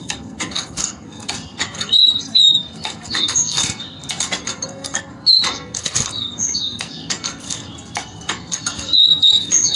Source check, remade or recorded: remade